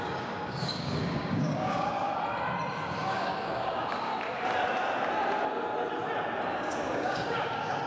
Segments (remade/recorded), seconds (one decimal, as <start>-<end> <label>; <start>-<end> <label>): 0.0-2.1 remade; 2.1-2.8 recorded; 2.8-4.1 remade; 4.1-6.5 recorded; 6.5-7.9 remade